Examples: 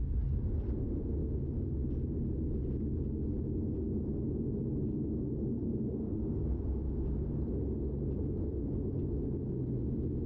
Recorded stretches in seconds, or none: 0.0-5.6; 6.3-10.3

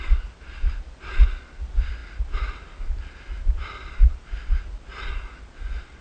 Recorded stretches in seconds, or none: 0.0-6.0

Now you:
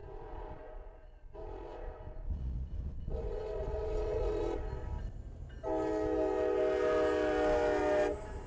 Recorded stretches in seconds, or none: 4.6-8.5

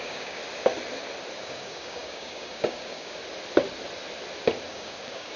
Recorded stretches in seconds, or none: 0.4-1.4; 3.2-4.7

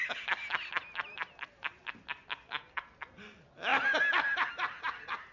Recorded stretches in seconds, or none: 0.0-5.3